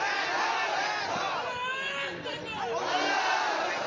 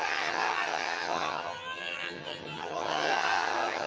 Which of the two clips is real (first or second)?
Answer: first